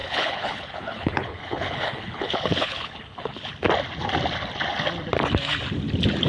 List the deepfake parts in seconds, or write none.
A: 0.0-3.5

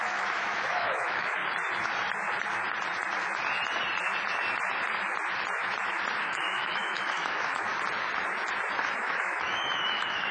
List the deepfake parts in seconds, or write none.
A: 0.0-1.4; 6.2-7.7; 9.0-10.3

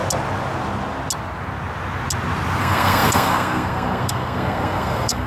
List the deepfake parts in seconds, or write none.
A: 2.6-5.3

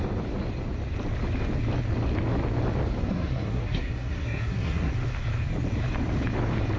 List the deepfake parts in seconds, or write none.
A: 3.0-4.9